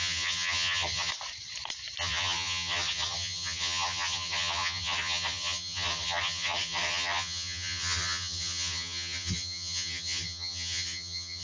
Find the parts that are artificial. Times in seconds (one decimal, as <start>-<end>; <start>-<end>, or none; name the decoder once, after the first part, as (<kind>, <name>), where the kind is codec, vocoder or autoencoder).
0.0-1.1 (vocoder, HiFi-GAN); 2.0-11.4